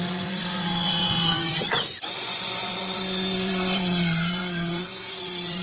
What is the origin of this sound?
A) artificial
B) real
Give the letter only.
A